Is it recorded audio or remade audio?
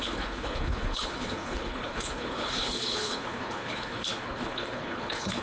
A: remade